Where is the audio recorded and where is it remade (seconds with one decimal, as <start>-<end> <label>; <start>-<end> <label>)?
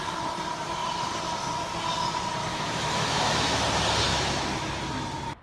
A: 0.0-2.5 recorded; 2.5-3.6 remade; 3.6-4.1 recorded; 4.1-4.7 remade; 4.7-5.4 recorded